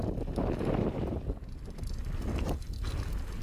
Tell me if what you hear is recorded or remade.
recorded